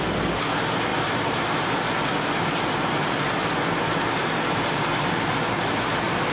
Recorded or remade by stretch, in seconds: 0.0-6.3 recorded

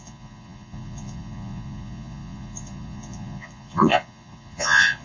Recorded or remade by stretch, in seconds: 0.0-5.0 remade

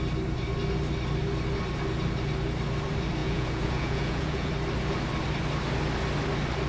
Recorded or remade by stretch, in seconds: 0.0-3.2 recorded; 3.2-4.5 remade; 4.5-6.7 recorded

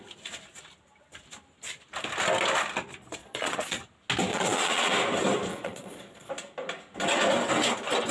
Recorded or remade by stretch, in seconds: 0.0-3.2 recorded; 3.2-3.8 remade; 3.8-4.3 recorded; 4.3-4.9 remade; 4.9-5.5 recorded; 5.5-6.3 remade; 6.3-8.1 recorded

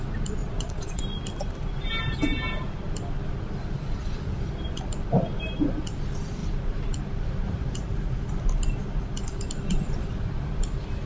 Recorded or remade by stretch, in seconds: 0.0-0.4 recorded; 0.4-1.0 remade; 1.0-11.1 recorded